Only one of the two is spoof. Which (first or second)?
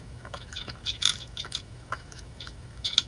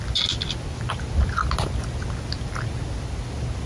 first